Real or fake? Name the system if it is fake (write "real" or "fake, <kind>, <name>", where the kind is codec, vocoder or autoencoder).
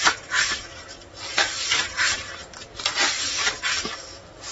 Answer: real